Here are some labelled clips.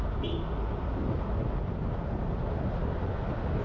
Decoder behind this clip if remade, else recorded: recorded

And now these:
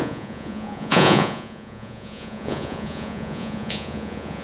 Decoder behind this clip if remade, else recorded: remade, vocoder, Vocos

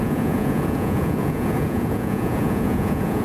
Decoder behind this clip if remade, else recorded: remade, vocoder, Vocos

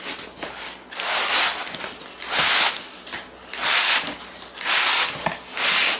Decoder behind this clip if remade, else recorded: recorded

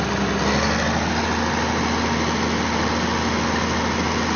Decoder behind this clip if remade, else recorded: recorded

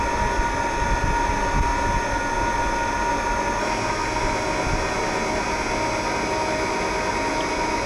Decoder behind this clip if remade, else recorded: recorded